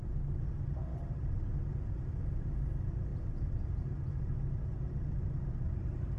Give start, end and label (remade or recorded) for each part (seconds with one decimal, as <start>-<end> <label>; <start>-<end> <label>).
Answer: 0.0-0.9 recorded; 0.9-2.3 remade; 2.3-3.1 recorded; 3.1-3.7 remade; 3.7-6.2 recorded